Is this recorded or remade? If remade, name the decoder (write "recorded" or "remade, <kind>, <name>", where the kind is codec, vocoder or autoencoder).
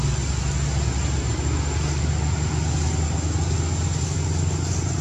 recorded